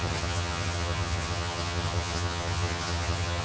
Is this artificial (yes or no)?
yes